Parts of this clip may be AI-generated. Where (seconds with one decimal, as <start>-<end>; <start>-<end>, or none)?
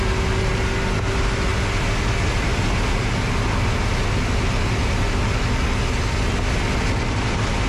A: none